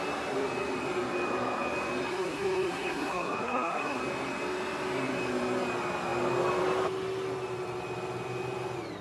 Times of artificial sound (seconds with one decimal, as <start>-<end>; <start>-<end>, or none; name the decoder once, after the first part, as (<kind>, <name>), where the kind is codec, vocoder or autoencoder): 2.1-4.0 (codec, SNAC)